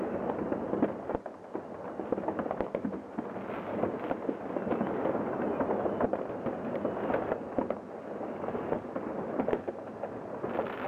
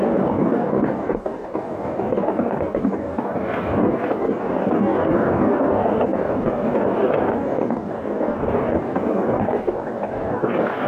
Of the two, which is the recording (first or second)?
first